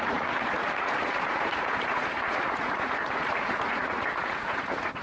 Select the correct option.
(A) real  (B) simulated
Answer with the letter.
B